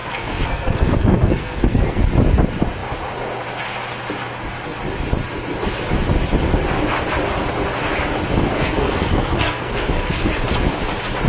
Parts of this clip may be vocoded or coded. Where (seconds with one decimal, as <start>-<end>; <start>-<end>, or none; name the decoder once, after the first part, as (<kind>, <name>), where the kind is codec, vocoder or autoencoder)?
0.0-2.0 (codec, SNAC); 8.5-10.3